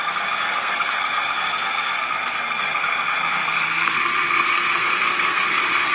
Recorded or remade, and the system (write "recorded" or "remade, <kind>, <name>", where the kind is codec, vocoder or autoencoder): remade, codec, SNAC